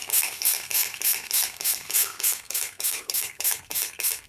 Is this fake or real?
fake